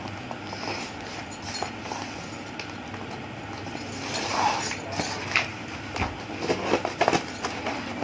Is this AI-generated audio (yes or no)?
no